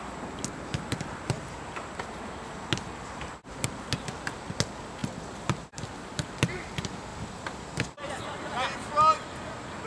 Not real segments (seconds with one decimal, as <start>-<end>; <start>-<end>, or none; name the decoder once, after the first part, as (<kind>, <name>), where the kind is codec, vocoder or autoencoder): 5.0-6.1 (vocoder, BigVGAN v2); 7.1-8.3